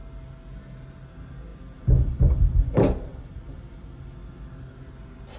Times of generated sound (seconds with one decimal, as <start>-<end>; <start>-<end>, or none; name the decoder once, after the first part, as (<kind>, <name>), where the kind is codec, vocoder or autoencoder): none